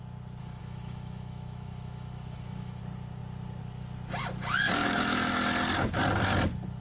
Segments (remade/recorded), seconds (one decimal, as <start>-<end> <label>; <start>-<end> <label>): 0.0-0.4 recorded; 0.4-2.8 remade; 2.8-4.8 recorded; 4.8-5.4 remade; 5.4-6.8 recorded